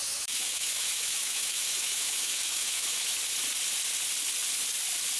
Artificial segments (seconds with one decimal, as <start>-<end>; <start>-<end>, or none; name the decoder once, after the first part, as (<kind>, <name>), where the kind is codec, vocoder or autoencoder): 0.0-3.1 (autoencoder, DAC-VAE)